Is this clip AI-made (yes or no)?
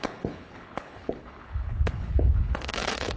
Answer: yes